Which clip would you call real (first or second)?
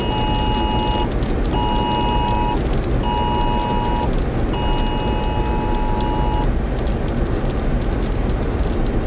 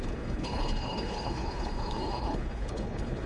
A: first